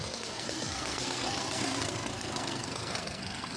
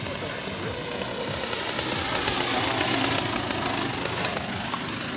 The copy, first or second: first